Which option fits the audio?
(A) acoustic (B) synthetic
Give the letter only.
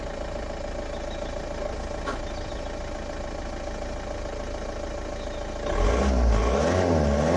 A